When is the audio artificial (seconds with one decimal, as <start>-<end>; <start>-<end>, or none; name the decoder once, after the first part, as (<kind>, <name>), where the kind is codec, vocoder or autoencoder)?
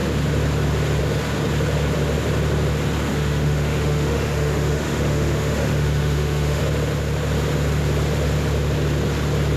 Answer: 3.1-6.6 (autoencoder, DAC-VAE)